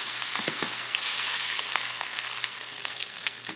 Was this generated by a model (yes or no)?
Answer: yes